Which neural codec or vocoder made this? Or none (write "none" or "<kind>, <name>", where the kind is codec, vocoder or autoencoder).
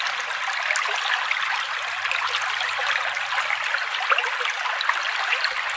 none